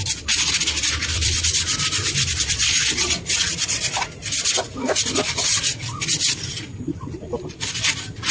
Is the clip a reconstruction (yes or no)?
no